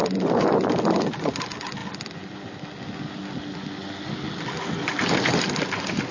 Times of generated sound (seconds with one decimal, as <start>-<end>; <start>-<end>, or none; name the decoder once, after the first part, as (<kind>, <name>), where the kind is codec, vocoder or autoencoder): none